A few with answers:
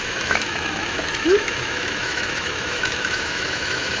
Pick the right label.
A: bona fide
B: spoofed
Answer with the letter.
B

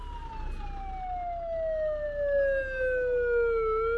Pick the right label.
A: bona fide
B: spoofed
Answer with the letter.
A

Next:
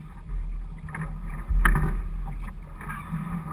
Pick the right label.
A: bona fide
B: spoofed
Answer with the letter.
A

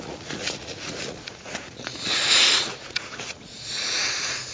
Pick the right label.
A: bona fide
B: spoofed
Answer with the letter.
B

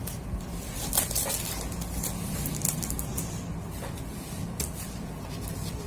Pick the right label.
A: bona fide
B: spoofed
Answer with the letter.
A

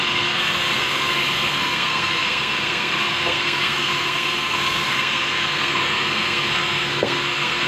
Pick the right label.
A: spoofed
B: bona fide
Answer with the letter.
A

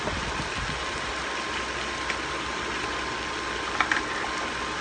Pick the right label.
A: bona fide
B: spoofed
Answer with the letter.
A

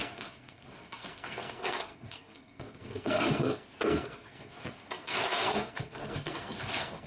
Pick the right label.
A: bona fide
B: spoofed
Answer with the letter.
B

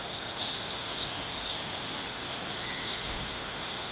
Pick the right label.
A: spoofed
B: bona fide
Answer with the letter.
A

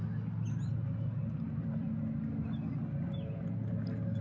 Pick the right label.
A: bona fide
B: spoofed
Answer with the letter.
A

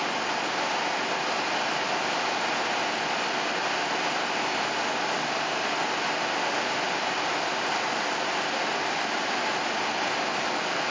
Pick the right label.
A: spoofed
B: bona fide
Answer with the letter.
B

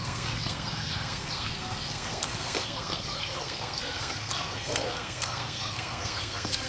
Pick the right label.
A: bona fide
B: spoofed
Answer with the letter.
B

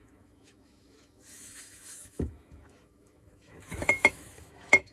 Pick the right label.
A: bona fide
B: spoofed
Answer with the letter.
B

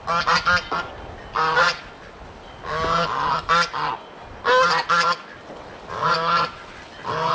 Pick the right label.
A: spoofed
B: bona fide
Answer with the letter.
B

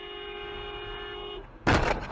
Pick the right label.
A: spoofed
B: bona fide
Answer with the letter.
B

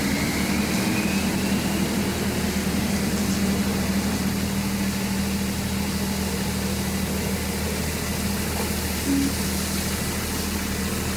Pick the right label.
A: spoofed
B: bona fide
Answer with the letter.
B